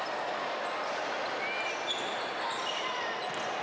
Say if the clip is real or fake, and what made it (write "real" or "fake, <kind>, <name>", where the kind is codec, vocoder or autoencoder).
real